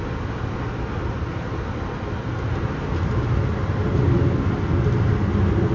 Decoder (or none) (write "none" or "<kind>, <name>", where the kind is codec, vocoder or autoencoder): none